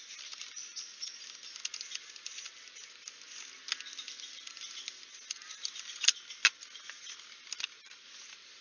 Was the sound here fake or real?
real